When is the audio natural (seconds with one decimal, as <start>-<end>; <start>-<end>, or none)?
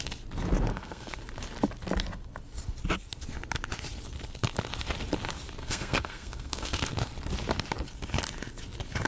0.0-0.7; 1.2-5.6; 6.9-9.1